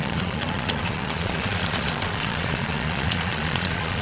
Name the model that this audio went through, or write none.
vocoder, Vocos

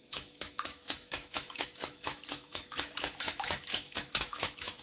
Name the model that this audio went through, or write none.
autoencoder, DAC-VAE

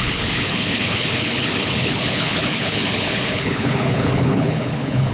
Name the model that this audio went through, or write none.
codec, HILCodec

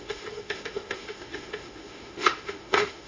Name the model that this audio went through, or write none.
autoencoder, DAC-VAE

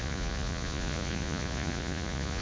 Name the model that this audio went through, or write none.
vocoder, Vocos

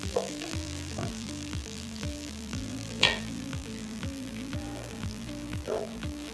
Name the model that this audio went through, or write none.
vocoder, BigVGAN v2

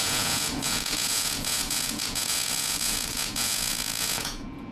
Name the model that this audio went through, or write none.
vocoder, Vocos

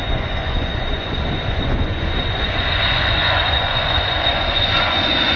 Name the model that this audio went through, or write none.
vocoder, Vocos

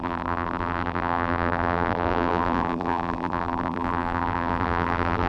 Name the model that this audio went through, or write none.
vocoder, BigVGAN v2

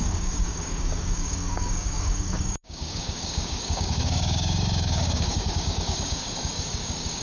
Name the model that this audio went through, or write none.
codec, DAC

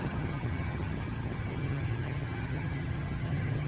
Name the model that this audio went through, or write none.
vocoder, HiFi-GAN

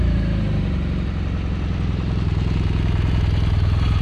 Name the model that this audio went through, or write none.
none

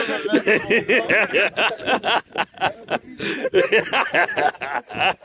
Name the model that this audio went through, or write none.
none